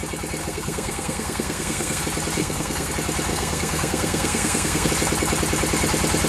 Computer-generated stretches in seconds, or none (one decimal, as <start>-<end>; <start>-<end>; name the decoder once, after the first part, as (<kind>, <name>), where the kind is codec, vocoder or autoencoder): 0.4-2.0 (codec, SNAC); 2.4-2.9; 3.3-4.9